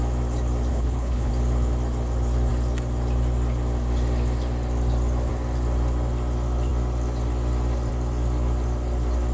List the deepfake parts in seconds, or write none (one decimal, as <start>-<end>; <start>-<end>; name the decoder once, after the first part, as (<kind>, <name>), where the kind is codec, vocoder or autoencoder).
0.7-1.3 (codec, HILCodec)